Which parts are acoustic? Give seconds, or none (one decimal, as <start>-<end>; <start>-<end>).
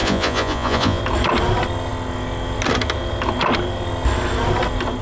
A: 1.0-5.0